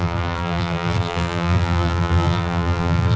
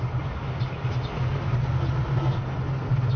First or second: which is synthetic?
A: first